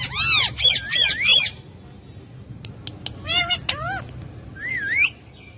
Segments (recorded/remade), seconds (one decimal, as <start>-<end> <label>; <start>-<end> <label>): 0.0-5.6 recorded